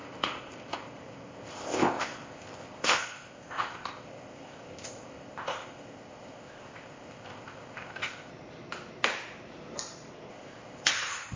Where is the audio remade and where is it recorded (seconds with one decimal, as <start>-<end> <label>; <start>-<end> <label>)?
0.0-8.3 remade; 8.3-10.3 recorded; 10.3-11.4 remade